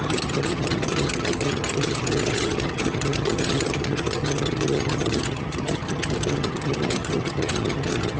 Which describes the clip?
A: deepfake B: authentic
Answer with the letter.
A